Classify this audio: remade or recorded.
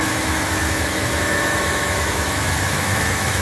remade